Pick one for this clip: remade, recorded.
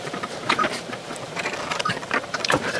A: remade